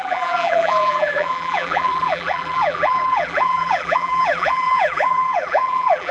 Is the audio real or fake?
fake